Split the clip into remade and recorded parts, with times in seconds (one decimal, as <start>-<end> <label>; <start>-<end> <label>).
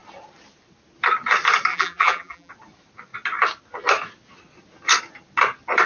0.0-1.7 recorded; 1.7-2.5 remade; 2.5-5.9 recorded